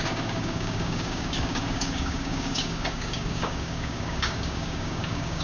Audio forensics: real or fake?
fake